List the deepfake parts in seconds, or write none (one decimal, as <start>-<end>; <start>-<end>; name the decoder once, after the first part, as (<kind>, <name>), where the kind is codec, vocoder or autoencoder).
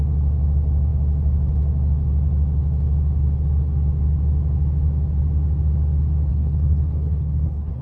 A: 6.3-7.8 (codec, HILCodec)